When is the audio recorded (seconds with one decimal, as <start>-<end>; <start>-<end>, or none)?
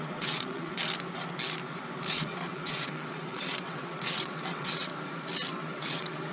0.8-2.1; 4.9-5.5